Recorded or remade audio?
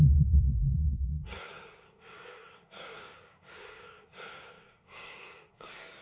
remade